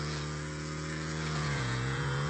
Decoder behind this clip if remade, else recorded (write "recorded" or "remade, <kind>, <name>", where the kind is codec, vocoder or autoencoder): remade, vocoder, Vocos